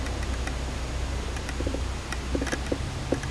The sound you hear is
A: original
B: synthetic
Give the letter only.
A